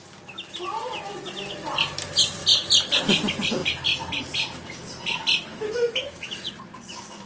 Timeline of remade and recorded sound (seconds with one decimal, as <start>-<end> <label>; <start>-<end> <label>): 0.0-5.5 recorded; 5.5-6.5 remade; 6.5-7.3 recorded